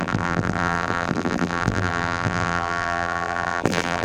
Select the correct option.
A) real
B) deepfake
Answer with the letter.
B